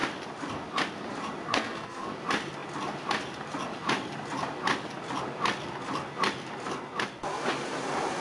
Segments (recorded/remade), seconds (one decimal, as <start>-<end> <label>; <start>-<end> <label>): 0.0-1.5 recorded; 1.5-2.1 remade; 2.1-8.2 recorded